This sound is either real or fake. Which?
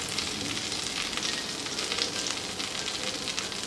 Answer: real